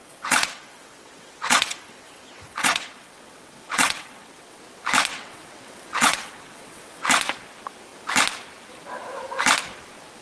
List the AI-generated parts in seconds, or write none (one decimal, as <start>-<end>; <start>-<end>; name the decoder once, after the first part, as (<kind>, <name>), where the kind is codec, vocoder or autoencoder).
0.0-4.6 (vocoder, WaveNeXt); 5.1-7.1